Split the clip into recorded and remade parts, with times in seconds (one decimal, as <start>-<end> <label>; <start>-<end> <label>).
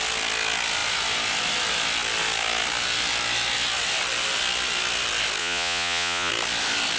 0.0-5.4 recorded; 5.4-6.3 remade; 6.3-7.0 recorded